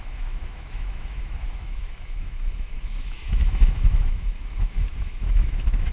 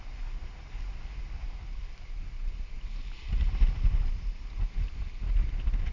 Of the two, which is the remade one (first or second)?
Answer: first